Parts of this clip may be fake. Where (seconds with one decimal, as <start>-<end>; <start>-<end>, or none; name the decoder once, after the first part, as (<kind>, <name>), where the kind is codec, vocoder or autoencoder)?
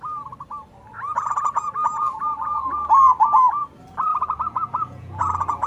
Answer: 4.1-5.7 (vocoder, Vocos)